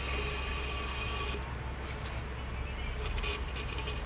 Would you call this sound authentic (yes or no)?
yes